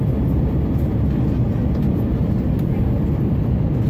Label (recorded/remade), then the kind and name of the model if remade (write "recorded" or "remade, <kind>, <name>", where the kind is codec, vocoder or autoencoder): recorded